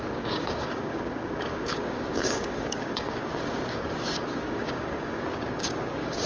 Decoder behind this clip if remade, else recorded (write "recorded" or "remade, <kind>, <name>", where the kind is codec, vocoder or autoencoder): remade, codec, DAC